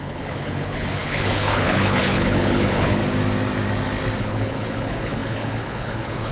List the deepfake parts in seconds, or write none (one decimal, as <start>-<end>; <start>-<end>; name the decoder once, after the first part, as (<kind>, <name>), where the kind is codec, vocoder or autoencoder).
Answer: 0.0-3.0 (codec, HILCodec); 4.2-6.3